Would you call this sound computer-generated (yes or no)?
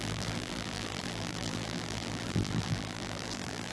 yes